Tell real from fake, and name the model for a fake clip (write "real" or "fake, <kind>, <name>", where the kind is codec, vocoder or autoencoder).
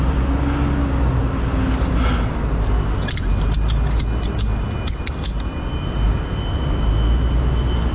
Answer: real